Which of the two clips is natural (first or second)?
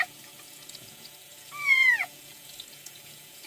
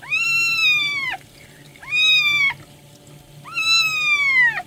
second